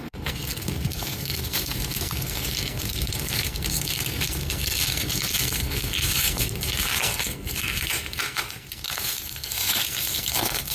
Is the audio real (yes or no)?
no